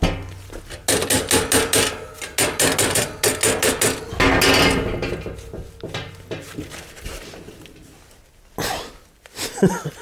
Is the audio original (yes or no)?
yes